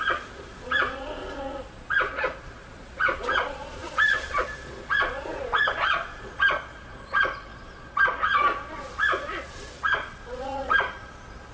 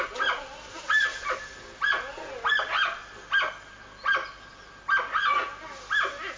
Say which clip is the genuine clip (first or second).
second